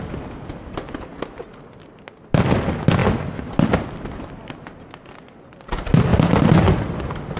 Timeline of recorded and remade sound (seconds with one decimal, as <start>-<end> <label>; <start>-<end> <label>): 0.0-7.4 recorded